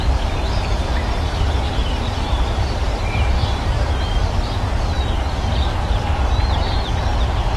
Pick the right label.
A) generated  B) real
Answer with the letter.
A